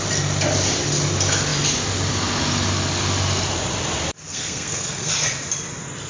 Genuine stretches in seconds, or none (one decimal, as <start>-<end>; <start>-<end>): 0.0-4.3; 5.1-6.1